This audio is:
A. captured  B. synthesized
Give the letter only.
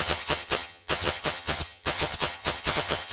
B